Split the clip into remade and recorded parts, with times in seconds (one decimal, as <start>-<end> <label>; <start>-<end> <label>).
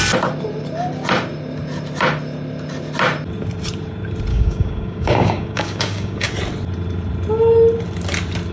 0.0-4.3 recorded; 4.3-6.3 remade; 6.3-8.5 recorded